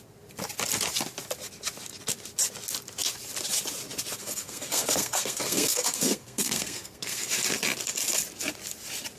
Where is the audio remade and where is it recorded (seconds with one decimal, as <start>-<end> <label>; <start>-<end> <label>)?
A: 0.0-4.2 recorded; 4.2-7.3 remade; 7.3-9.2 recorded